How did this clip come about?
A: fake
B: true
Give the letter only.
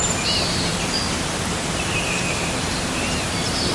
A